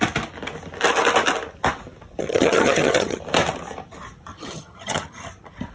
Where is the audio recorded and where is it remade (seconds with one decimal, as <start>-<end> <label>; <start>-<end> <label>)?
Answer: 0.0-2.2 recorded; 2.2-3.2 remade; 3.2-4.3 recorded; 4.3-5.3 remade; 5.3-5.7 recorded